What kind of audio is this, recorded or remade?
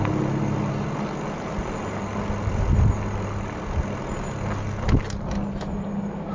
recorded